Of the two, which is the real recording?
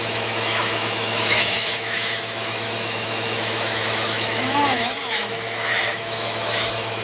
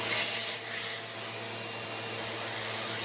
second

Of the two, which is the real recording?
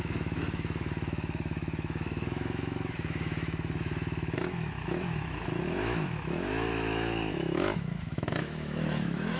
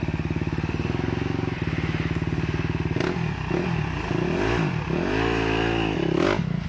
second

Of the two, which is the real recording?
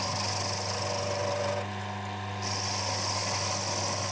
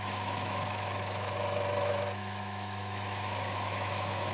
first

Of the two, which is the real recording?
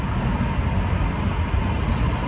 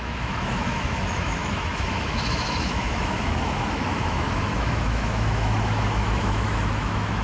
first